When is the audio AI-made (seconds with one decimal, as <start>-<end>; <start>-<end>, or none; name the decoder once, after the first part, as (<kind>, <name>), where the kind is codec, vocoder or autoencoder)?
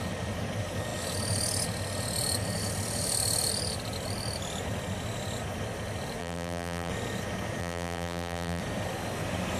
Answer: 6.2-6.9 (vocoder, BigVGAN v2); 7.6-8.6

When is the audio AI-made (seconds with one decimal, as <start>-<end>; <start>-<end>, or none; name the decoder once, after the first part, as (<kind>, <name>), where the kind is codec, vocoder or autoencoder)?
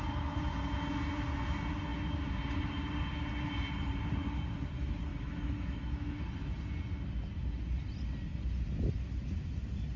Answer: 5.1-6.2 (autoencoder, DAC-VAE)